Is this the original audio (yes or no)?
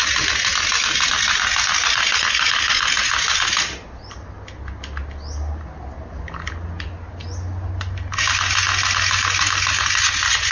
yes